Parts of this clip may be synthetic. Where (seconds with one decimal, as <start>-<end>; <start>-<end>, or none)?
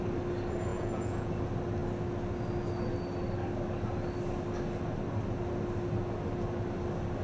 0.7-1.3